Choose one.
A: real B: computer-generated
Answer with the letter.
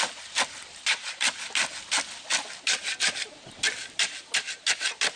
A